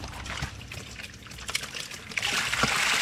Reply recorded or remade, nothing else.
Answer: recorded